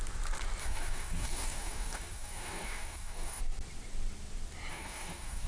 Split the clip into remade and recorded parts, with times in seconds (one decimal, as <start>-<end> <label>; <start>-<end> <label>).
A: 0.0-0.6 recorded; 0.6-3.4 remade; 3.4-4.7 recorded; 4.7-5.5 remade